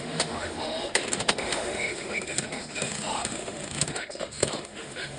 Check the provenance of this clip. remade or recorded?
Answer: remade